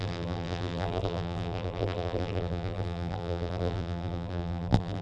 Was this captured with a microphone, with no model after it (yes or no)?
no